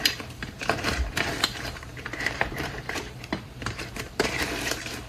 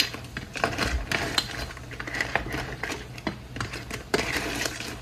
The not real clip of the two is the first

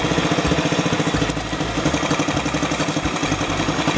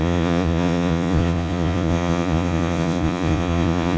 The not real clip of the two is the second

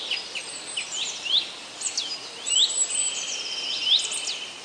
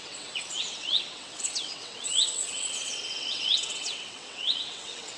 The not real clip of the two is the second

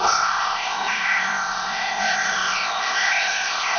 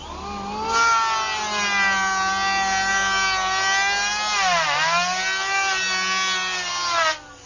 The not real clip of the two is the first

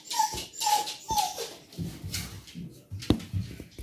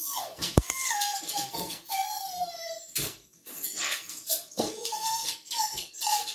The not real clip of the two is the second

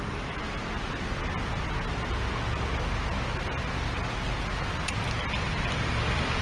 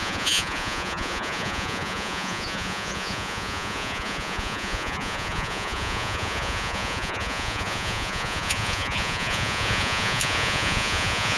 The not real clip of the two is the second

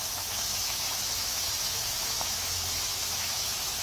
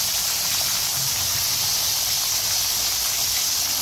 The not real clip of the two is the first